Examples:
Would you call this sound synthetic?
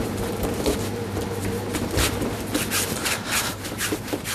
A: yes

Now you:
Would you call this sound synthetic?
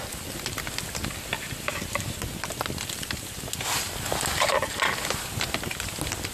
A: no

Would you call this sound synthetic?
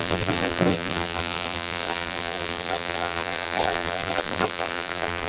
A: yes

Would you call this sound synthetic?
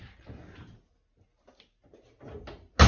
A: no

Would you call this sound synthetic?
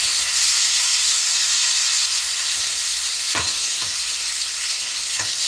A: yes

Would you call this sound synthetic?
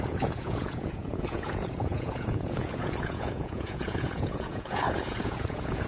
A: yes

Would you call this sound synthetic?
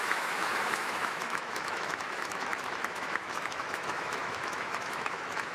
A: yes